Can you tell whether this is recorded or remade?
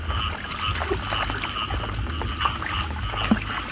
recorded